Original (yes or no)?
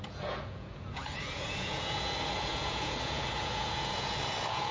no